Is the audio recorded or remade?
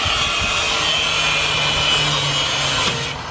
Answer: recorded